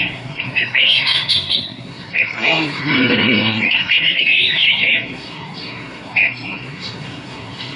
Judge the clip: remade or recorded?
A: remade